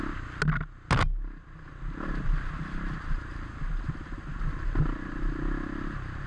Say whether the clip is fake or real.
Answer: real